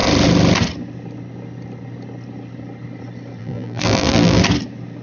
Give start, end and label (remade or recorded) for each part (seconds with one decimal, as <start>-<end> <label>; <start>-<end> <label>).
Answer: 0.0-3.4 recorded; 3.4-4.4 remade; 4.4-5.0 recorded